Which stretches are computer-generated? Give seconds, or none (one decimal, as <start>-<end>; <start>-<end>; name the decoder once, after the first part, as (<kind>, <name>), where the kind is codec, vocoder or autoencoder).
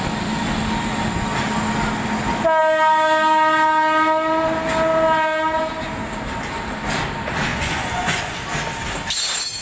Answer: 7.5-8.4 (vocoder, Vocos)